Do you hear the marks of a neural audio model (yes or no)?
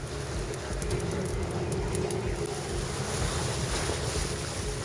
no